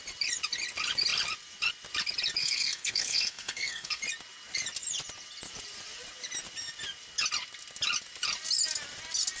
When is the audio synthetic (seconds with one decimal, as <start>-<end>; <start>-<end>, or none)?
2.4-4.0